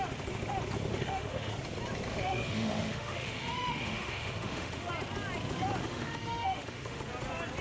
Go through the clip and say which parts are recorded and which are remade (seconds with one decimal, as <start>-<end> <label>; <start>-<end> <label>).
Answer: 0.0-0.9 recorded; 0.9-1.5 remade; 1.5-2.1 recorded; 2.1-4.9 remade; 4.9-5.8 recorded; 5.8-7.0 remade; 7.0-7.6 recorded